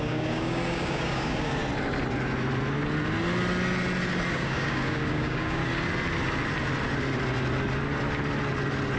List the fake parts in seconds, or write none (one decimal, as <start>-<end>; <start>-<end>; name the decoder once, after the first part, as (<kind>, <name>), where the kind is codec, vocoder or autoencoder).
0.0-1.6 (codec, DAC); 4.3-5.6